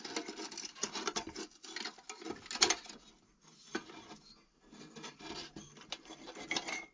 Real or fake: real